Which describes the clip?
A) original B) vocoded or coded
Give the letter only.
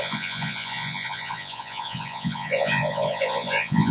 B